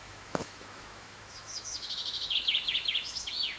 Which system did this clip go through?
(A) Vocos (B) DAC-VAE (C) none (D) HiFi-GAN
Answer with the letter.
B